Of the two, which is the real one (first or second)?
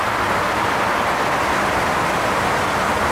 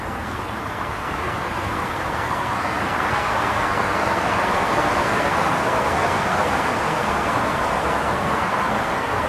first